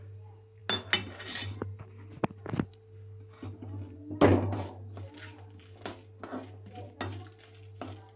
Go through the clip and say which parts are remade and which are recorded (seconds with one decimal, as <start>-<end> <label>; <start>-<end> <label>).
0.0-8.2 recorded